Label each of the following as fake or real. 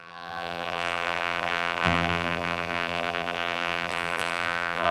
fake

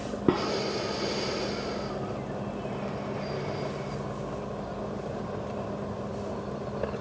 real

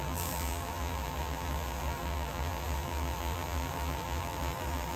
fake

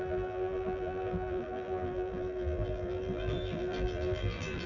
fake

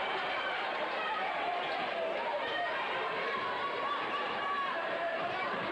fake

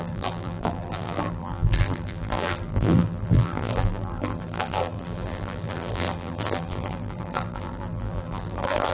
fake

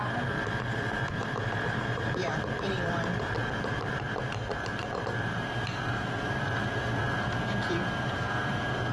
fake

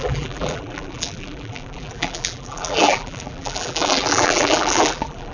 fake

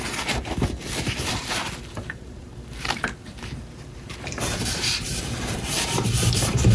fake